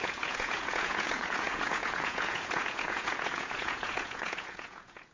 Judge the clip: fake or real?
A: fake